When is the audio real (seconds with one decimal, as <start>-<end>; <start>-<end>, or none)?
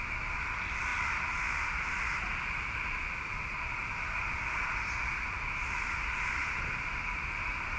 0.0-7.8